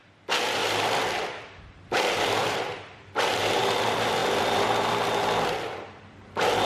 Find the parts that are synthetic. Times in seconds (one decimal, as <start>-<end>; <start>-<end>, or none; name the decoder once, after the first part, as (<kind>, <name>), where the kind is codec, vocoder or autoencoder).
0.6-1.6 (vocoder, BigVGAN v2); 2.4-3.6; 4.2-4.9